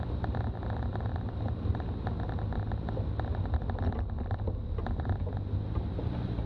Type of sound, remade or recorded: recorded